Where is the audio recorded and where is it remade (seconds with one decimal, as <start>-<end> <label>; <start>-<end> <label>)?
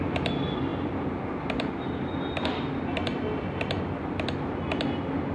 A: 0.0-5.3 recorded